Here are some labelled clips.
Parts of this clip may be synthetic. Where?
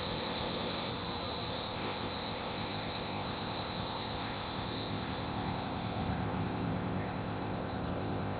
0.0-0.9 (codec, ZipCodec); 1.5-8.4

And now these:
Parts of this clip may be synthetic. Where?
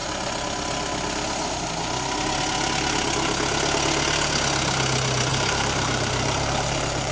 5.3-7.1 (vocoder, BigVGAN v2)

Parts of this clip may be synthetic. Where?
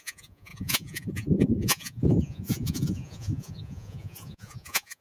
0.0-5.0 (vocoder, Vocos)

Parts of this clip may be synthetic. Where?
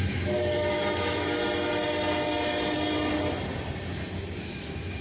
0.0-1.4 (autoencoder, DAC-VAE); 4.4-5.0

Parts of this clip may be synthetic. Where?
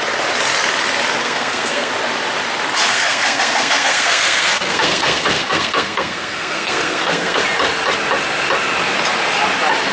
1.2-1.9 (codec, SNAC); 2.9-7.4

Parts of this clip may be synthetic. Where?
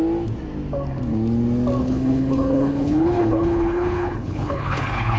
1.8-5.2 (codec, HILCodec)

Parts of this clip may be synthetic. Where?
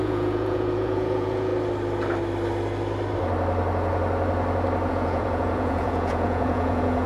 0.0-1.5 (vocoder, Vocos); 4.9-7.1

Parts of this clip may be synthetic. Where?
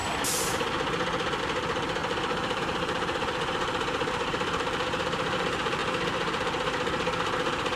1.4-7.8 (vocoder, BigVGAN v2)